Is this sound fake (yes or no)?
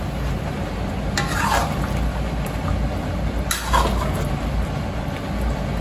no